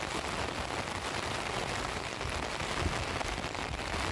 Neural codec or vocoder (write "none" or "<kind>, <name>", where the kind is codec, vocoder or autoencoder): none